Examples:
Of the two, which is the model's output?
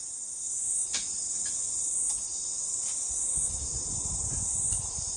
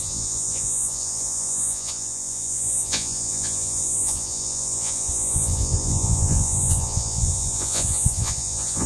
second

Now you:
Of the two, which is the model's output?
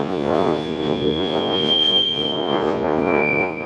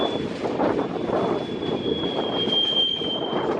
first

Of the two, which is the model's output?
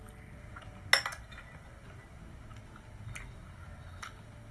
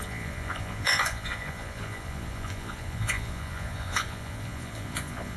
second